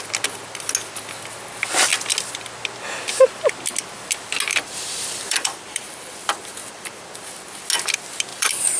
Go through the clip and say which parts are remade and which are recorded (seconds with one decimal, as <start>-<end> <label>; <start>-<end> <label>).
0.0-4.5 recorded; 4.5-7.1 remade; 7.1-8.3 recorded; 8.3-8.8 remade

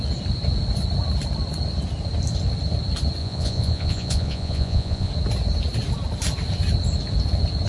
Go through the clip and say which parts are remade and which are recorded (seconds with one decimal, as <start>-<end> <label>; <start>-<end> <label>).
0.0-3.2 recorded; 3.2-5.1 remade; 5.1-7.7 recorded